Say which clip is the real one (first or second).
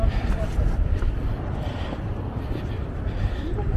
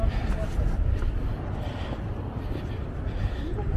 second